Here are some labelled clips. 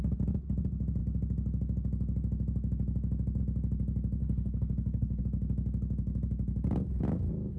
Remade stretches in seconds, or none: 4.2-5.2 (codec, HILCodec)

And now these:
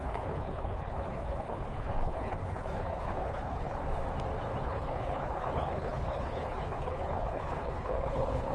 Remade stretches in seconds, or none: 0.0-3.8 (codec, HILCodec); 4.6-8.5

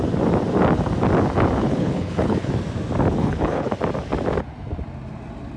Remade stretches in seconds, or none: 1.6-2.5 (codec, HILCodec); 3.2-3.7

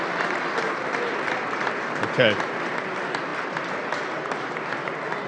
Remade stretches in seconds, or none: none

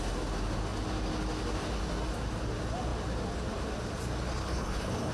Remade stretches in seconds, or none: 4.4-5.1 (codec, HILCodec)

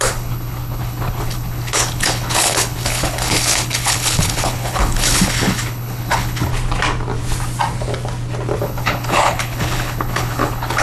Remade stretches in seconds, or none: 0.0-6.5 (codec, HILCodec); 8.6-10.8

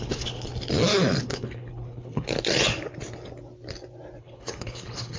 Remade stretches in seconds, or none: 0.0-0.5 (codec, HILCodec); 1.2-2.3; 4.2-5.2